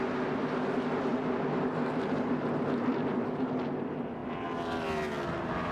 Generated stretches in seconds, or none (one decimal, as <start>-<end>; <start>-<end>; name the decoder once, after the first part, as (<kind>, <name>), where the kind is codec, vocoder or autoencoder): 1.1-3.7 (vocoder, BigVGAN v2)